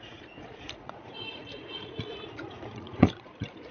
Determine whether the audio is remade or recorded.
remade